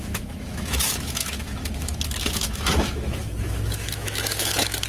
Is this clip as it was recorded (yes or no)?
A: no